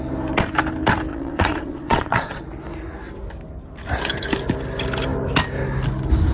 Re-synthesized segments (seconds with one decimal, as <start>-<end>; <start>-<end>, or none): 1.1-2.4